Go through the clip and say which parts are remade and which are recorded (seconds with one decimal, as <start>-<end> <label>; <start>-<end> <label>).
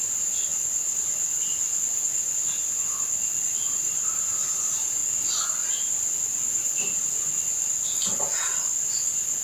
0.0-0.5 remade; 0.5-3.7 recorded; 3.7-5.0 remade; 5.0-9.4 recorded